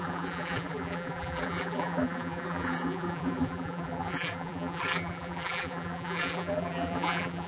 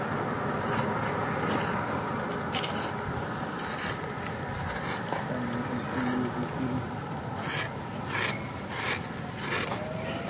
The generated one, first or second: first